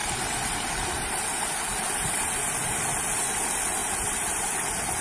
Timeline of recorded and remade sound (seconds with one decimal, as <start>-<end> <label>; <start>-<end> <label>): 0.0-5.0 recorded